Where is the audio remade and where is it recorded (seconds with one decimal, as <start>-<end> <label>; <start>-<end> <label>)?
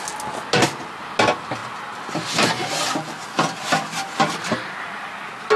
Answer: 0.0-5.6 recorded